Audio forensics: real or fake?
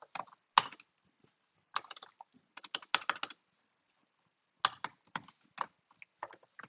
real